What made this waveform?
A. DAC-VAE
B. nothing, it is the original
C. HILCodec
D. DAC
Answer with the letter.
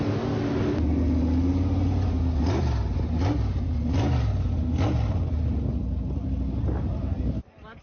B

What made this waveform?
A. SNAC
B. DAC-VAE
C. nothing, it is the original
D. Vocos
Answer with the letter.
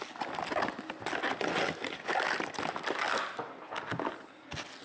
C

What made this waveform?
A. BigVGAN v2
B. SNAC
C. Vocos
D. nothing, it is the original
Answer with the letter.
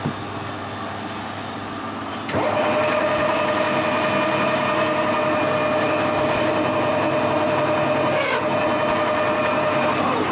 D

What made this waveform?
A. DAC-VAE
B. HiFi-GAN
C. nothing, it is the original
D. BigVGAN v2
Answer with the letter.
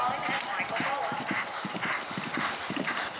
C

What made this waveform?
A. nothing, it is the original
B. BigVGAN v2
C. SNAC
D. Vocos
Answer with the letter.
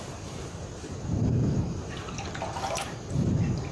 B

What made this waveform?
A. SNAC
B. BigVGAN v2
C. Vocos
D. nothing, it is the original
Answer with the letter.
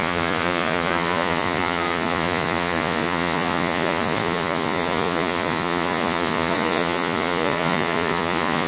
C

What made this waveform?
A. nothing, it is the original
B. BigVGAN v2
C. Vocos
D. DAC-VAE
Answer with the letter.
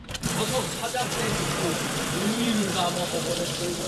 B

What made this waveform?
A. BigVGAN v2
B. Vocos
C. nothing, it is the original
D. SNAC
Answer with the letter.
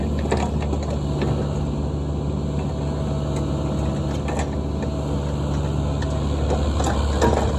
C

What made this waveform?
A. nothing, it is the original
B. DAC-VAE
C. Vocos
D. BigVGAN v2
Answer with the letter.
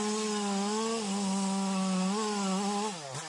A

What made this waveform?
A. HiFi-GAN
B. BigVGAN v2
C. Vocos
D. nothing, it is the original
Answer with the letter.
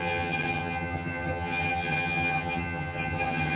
A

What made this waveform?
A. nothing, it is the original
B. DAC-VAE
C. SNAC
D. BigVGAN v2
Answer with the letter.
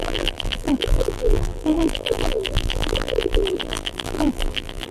D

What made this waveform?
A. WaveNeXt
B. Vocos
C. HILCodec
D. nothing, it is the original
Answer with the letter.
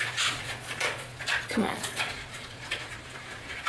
B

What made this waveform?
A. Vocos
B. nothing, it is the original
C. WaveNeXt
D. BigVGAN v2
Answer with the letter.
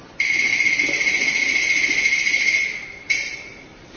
D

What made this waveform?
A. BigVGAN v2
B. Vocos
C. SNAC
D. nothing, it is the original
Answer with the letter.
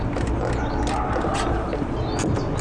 D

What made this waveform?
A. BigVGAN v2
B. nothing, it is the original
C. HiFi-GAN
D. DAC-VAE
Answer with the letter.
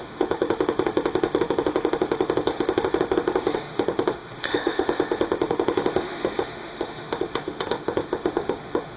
D